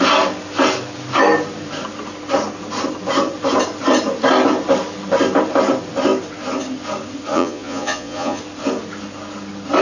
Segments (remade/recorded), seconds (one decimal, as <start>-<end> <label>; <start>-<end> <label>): 0.0-7.3 recorded; 7.3-8.4 remade; 8.4-9.8 recorded